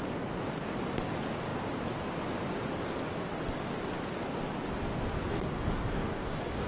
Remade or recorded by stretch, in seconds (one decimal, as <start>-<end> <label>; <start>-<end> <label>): 0.0-5.3 recorded; 5.3-6.7 remade